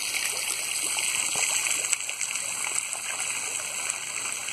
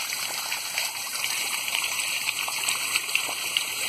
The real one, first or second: first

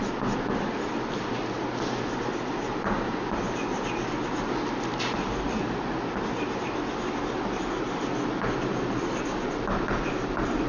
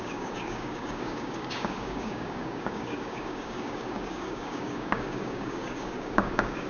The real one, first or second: first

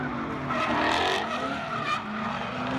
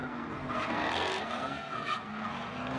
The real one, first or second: first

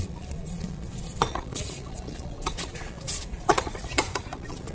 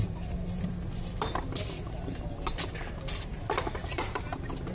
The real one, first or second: second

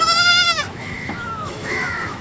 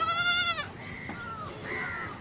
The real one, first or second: second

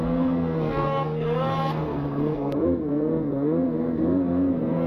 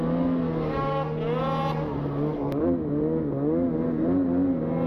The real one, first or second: second